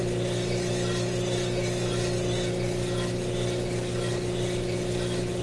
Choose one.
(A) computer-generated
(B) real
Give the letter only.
B